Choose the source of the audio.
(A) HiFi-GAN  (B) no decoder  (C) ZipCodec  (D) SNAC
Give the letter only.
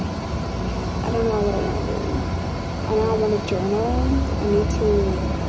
B